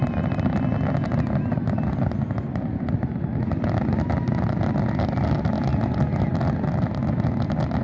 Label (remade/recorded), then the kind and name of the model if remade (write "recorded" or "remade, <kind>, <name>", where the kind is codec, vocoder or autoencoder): recorded